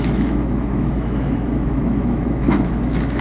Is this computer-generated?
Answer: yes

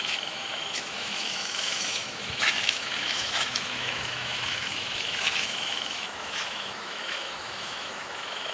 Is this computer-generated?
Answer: yes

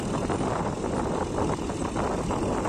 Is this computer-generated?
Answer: no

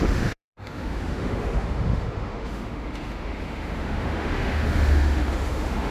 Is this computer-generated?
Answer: yes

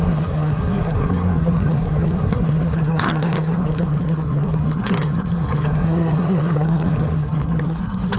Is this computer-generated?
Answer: yes